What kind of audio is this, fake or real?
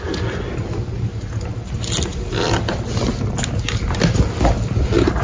real